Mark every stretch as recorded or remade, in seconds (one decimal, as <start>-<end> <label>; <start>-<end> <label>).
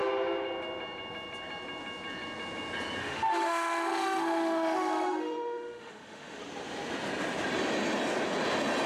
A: 0.0-3.0 recorded; 3.0-6.4 remade; 6.4-8.9 recorded